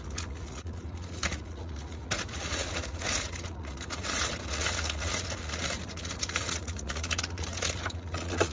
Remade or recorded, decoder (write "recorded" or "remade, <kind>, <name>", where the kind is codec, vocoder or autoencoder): remade, vocoder, Vocos